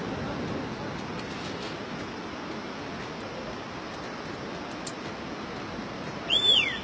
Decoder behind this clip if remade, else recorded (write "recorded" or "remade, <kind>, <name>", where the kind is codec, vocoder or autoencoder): recorded